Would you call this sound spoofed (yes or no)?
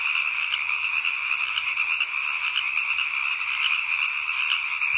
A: no